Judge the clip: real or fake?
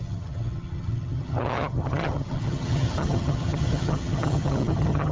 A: fake